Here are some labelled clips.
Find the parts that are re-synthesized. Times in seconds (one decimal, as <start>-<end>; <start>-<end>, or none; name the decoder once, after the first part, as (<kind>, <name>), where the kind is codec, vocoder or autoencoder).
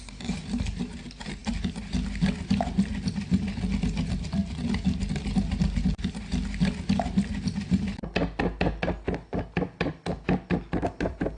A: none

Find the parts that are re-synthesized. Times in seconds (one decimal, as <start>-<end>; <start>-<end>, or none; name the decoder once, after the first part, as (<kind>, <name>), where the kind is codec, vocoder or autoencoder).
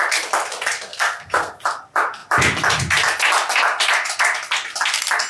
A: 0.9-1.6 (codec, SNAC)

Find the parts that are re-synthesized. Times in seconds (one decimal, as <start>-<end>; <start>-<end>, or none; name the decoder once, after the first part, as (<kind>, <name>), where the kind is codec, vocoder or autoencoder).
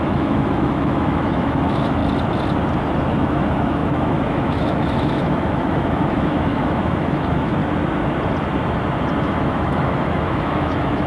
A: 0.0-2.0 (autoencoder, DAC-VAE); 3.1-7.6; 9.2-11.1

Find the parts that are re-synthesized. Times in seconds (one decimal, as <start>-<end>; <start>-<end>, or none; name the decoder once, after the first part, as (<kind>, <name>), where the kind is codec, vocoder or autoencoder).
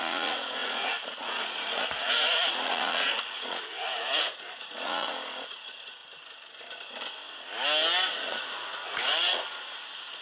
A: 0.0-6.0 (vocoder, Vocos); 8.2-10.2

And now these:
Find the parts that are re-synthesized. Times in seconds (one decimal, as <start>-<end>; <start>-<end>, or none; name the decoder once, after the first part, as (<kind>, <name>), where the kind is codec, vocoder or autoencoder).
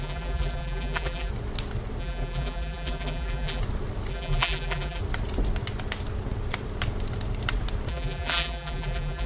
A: 0.0-1.3 (vocoder, BigVGAN v2); 2.0-3.6; 4.1-5.0; 7.9-9.3